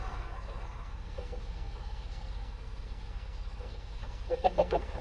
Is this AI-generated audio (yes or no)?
yes